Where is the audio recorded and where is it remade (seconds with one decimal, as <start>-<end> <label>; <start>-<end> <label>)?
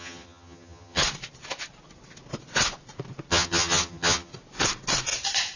0.0-1.0 remade; 1.0-3.3 recorded; 3.3-4.3 remade; 4.3-5.6 recorded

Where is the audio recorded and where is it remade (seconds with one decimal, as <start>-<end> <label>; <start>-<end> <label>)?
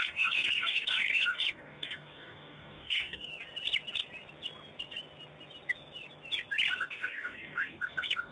0.0-3.3 remade; 3.3-6.8 recorded; 6.8-8.3 remade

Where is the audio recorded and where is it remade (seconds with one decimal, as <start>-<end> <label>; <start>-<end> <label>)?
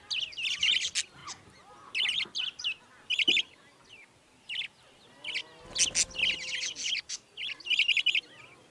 0.0-8.7 recorded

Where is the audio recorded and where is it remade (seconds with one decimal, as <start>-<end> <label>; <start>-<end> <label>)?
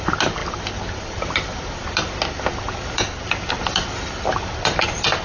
0.0-5.2 recorded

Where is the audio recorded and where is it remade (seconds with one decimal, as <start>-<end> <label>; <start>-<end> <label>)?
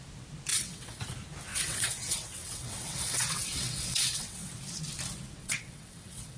0.0-0.5 recorded; 0.5-1.0 remade; 1.0-1.5 recorded; 1.5-4.5 remade; 4.5-5.4 recorded; 5.4-6.4 remade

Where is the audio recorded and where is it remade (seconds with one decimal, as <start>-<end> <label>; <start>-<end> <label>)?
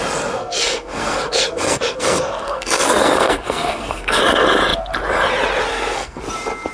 0.0-0.4 recorded; 0.4-4.2 remade; 4.2-5.7 recorded; 5.7-6.2 remade; 6.2-6.7 recorded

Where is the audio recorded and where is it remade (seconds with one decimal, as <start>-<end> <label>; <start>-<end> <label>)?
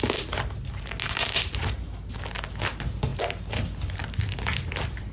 0.0-5.1 recorded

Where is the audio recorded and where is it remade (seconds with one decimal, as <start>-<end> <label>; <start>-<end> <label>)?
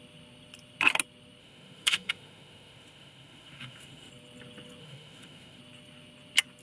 0.0-1.4 recorded; 1.4-4.1 remade; 4.1-4.8 recorded; 4.8-5.6 remade; 5.6-6.6 recorded